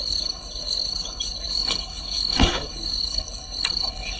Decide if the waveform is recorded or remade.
remade